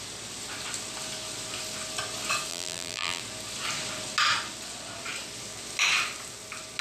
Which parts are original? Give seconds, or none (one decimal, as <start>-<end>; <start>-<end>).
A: 0.0-2.5; 3.2-6.8

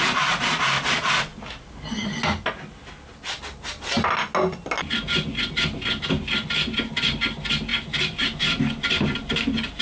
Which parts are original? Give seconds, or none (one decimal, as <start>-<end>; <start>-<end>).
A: 0.0-7.7; 8.6-9.8

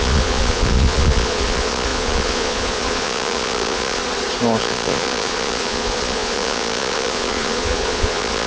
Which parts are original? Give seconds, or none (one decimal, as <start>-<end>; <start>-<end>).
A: 4.0-4.6

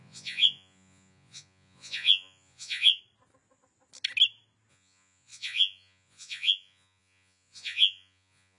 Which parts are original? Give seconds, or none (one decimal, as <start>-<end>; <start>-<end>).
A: 3.0-4.7

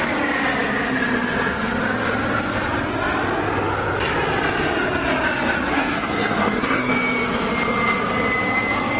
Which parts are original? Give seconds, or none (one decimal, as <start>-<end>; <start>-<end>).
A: 0.0-5.7; 6.9-9.0

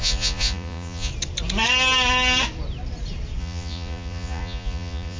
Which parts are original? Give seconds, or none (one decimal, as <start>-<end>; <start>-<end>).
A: 1.1-3.4